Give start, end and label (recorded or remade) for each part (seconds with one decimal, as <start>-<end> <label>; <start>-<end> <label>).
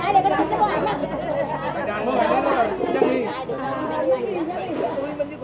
0.0-5.4 recorded